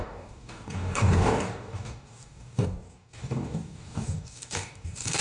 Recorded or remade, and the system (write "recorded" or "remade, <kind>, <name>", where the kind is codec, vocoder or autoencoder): remade, codec, DAC